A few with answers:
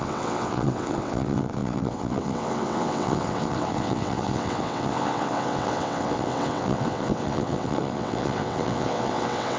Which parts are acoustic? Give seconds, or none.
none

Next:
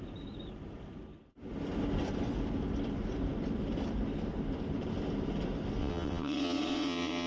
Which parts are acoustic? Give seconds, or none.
0.0-5.8

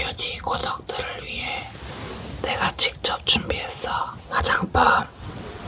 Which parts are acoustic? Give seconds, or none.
0.6-4.0

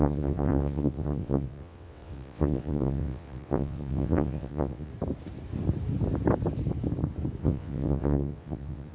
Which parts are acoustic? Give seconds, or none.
4.9-7.4

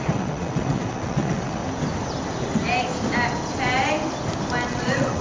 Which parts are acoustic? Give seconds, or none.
1.6-4.7

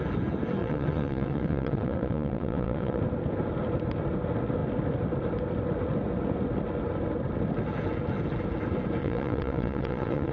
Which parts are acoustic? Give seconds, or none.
0.0-0.6; 3.0-9.0